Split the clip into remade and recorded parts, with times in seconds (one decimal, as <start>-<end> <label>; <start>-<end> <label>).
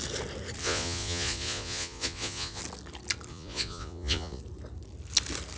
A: 0.0-0.6 recorded; 0.6-2.6 remade; 2.6-3.3 recorded; 3.3-4.4 remade; 4.4-5.6 recorded